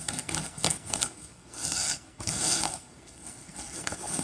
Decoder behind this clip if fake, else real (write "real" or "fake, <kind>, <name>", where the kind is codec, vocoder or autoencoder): fake, codec, SNAC